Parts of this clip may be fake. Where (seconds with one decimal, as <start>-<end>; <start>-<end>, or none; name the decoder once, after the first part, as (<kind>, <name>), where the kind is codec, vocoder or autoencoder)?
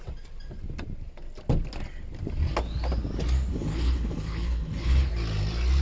3.5-5.1 (codec, HILCodec)